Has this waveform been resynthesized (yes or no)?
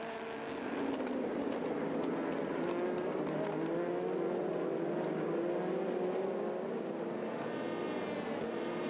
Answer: no